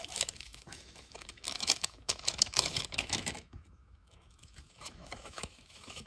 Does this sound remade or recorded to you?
remade